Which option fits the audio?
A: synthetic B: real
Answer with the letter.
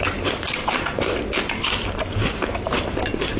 A